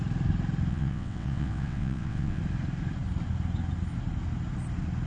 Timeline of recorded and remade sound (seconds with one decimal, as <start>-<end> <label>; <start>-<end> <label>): 0.0-0.7 recorded; 0.7-2.4 remade; 2.4-5.1 recorded